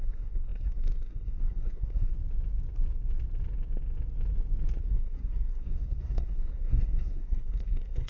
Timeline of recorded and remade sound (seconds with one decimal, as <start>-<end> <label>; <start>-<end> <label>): 0.0-2.1 remade; 2.1-4.8 recorded; 4.8-8.1 remade